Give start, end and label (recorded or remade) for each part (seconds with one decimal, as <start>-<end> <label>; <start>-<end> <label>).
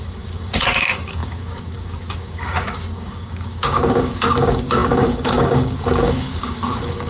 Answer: 0.0-7.1 remade